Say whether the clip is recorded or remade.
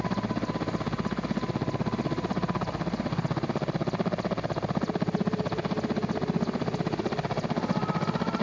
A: recorded